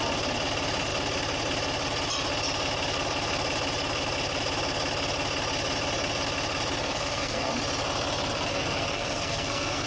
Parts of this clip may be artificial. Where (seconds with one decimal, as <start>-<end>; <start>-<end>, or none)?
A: 6.8-7.5; 8.5-9.9